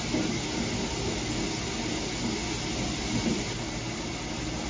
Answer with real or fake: real